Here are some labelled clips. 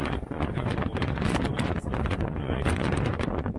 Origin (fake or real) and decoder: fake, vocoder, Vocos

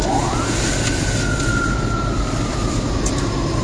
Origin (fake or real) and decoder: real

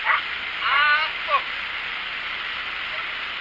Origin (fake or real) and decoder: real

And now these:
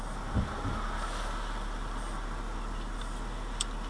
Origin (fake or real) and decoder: real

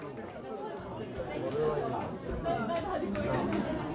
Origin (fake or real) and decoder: real